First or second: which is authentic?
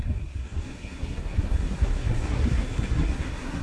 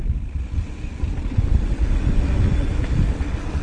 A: second